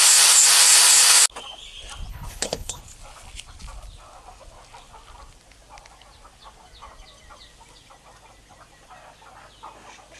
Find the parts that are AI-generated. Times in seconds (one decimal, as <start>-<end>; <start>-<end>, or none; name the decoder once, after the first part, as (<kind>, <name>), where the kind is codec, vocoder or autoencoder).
2.1-2.8 (codec, HILCodec)